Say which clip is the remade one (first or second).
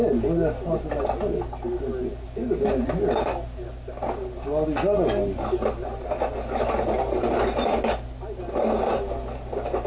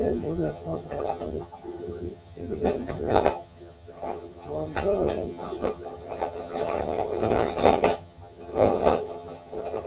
second